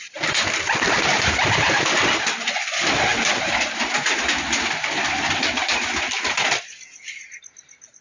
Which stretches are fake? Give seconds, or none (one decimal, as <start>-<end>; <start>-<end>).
0.0-8.0